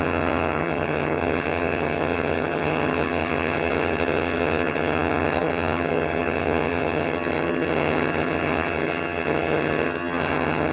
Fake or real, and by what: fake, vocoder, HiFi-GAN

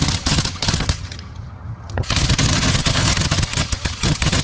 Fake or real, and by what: fake, vocoder, HiFi-GAN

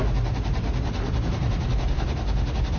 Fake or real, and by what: real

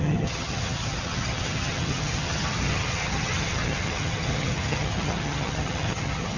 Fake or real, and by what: fake, vocoder, HiFi-GAN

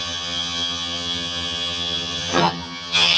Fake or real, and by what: fake, vocoder, HiFi-GAN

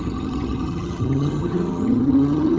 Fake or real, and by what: fake, vocoder, HiFi-GAN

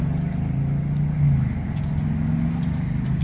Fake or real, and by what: real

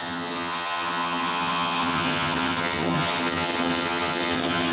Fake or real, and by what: fake, vocoder, HiFi-GAN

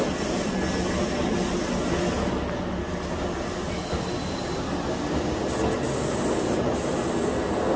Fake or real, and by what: real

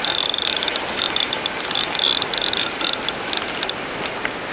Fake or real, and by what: real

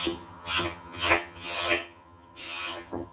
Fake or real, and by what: fake, vocoder, HiFi-GAN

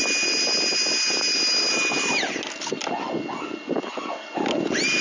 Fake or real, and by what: real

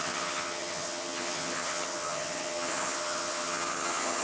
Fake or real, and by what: fake, vocoder, HiFi-GAN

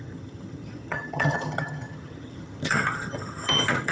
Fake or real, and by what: fake, vocoder, HiFi-GAN